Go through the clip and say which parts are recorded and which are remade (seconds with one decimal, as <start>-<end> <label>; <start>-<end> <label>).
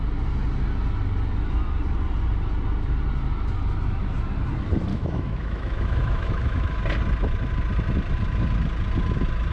0.0-4.9 recorded; 4.9-6.8 remade; 6.8-9.5 recorded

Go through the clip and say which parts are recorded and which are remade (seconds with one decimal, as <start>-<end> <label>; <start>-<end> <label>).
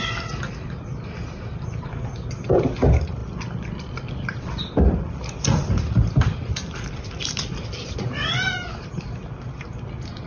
0.0-3.2 recorded; 3.2-7.9 remade; 7.9-10.3 recorded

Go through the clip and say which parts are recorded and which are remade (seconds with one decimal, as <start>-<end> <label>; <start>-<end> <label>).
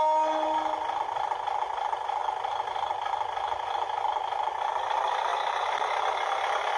0.0-6.8 recorded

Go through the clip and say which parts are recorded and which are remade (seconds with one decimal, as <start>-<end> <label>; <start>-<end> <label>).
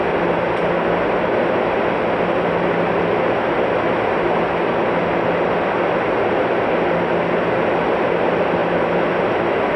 0.0-9.8 recorded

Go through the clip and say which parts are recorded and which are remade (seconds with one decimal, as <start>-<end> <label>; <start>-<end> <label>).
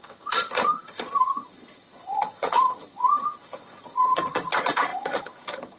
0.0-5.8 remade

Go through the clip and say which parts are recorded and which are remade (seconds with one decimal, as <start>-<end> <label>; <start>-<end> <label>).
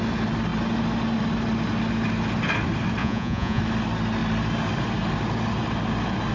0.0-3.0 recorded; 3.0-3.6 remade; 3.6-6.3 recorded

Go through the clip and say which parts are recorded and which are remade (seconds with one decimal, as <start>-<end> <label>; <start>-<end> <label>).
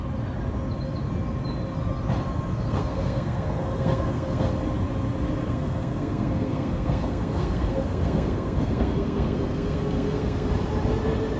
0.0-2.5 recorded; 2.5-4.5 remade; 4.5-5.4 recorded; 5.4-10.5 remade; 10.5-11.4 recorded